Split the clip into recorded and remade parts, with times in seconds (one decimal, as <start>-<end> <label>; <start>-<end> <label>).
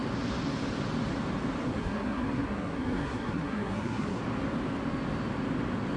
0.0-1.6 recorded; 1.6-4.2 remade; 4.2-6.0 recorded